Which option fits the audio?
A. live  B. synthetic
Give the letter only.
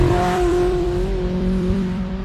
B